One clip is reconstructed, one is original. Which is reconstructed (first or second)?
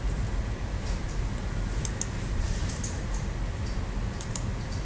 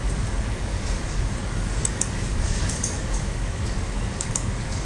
second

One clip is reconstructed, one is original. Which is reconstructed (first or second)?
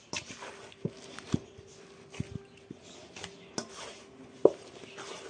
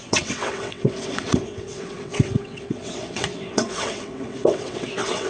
second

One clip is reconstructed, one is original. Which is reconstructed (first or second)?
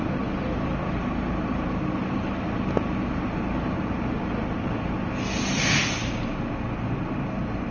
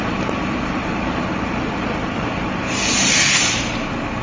second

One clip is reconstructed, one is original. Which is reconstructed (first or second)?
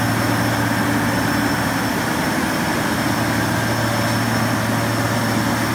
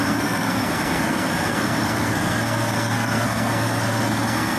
second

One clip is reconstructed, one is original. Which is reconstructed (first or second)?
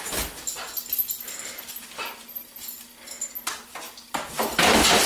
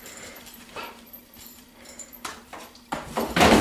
second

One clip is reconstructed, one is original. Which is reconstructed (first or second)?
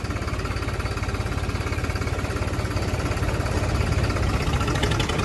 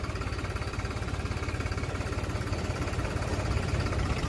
second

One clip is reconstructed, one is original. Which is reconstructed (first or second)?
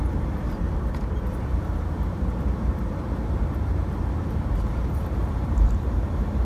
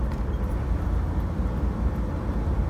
first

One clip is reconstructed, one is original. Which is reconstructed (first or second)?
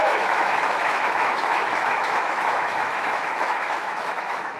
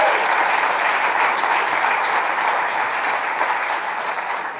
first